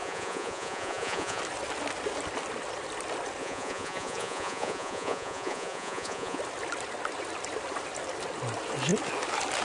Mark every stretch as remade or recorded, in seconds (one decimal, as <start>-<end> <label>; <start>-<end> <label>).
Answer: 0.0-1.4 remade; 1.4-3.4 recorded; 3.4-6.4 remade; 6.4-9.6 recorded